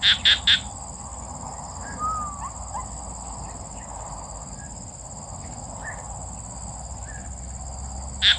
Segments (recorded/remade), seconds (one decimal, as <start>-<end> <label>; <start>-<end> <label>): 0.0-8.4 recorded